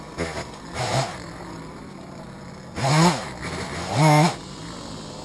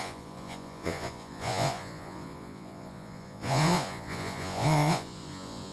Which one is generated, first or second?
second